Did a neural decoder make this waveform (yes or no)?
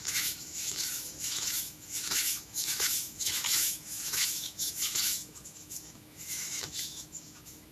yes